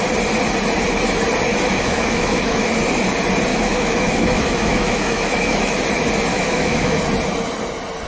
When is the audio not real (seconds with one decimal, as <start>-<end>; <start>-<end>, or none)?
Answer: 1.5-2.7; 3.5-5.8; 6.3-7.0